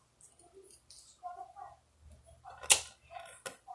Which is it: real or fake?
real